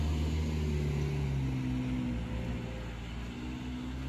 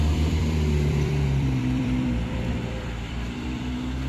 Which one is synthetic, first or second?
second